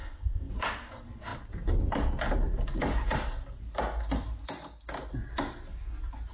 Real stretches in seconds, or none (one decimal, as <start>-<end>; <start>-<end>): 0.5-6.3